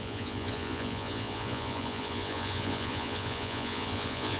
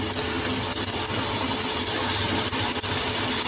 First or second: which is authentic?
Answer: second